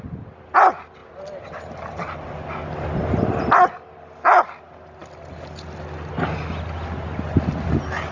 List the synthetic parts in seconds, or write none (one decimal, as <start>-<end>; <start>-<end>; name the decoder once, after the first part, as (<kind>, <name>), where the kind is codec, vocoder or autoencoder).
none